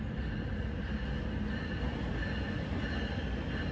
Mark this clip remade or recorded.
recorded